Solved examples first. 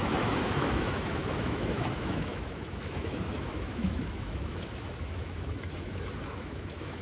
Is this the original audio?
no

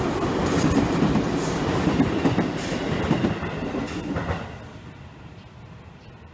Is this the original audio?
yes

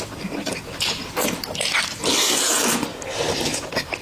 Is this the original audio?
yes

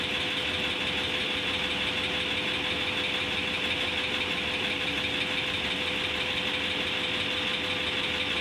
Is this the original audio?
yes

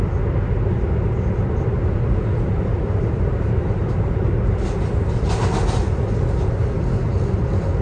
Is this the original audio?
yes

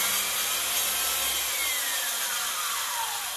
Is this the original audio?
yes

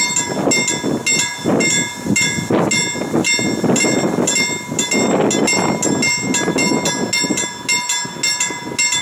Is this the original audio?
yes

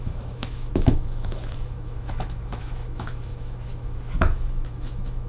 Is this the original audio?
no